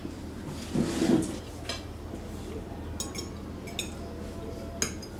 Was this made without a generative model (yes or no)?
yes